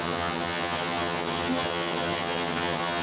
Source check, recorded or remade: remade